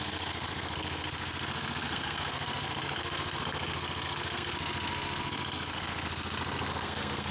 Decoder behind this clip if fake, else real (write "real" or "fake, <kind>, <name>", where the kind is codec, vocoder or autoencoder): fake, codec, SNAC